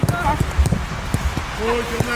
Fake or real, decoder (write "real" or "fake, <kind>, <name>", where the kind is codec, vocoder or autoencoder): real